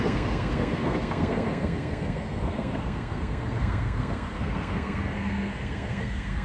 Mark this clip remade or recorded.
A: remade